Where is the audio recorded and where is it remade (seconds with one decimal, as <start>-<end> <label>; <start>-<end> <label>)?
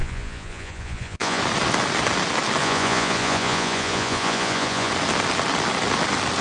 0.0-1.4 remade; 1.4-2.6 recorded; 2.6-4.9 remade; 4.9-6.4 recorded